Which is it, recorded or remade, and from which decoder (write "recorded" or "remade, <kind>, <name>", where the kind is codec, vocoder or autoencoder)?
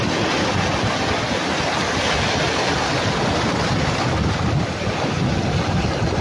recorded